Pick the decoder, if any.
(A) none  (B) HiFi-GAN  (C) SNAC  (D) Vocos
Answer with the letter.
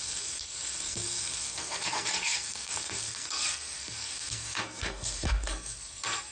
C